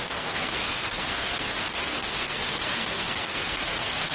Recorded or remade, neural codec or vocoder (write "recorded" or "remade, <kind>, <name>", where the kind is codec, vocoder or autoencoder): remade, codec, SNAC